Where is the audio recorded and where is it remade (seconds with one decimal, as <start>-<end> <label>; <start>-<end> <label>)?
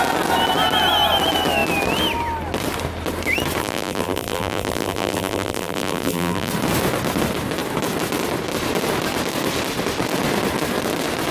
0.0-3.6 recorded; 3.6-6.5 remade; 6.5-11.3 recorded